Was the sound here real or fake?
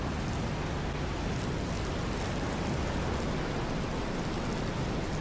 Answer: real